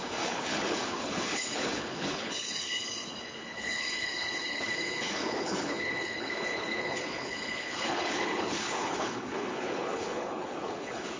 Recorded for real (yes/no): no